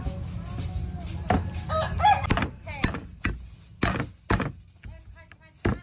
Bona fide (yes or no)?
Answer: yes